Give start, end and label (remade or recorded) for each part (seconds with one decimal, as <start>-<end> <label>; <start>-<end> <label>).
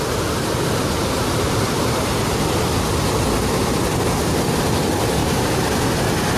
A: 0.0-5.2 recorded; 5.2-5.8 remade; 5.8-6.4 recorded